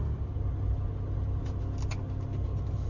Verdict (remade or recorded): recorded